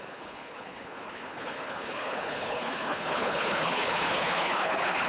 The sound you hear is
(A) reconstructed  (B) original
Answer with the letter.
A